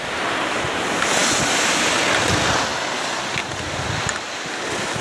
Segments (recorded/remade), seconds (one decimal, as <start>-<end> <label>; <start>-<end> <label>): 0.0-5.0 recorded